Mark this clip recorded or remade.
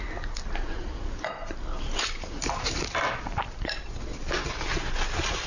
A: recorded